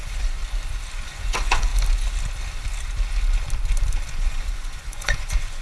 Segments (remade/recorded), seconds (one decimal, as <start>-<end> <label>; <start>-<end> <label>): 0.0-0.4 remade; 0.4-1.0 recorded; 1.0-1.7 remade; 1.7-4.1 recorded; 4.1-5.6 remade